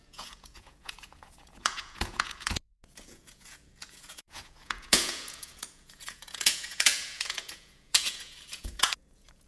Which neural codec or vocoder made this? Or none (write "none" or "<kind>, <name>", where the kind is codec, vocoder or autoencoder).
vocoder, Vocos